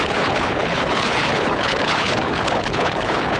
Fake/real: fake